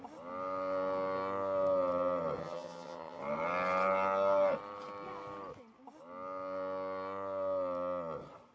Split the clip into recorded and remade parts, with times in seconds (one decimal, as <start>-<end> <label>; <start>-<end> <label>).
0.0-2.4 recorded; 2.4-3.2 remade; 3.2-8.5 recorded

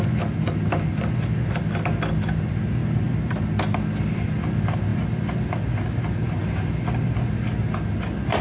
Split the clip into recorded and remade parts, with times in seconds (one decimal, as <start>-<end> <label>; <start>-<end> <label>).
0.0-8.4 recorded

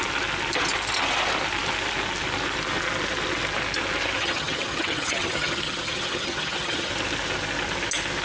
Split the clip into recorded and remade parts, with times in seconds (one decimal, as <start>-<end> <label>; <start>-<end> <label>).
0.0-4.2 recorded; 4.2-6.9 remade; 6.9-8.2 recorded